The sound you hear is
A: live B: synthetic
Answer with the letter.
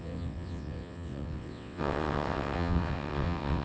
B